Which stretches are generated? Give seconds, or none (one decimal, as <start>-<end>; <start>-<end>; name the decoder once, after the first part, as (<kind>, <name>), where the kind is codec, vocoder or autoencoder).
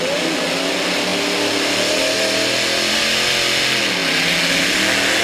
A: none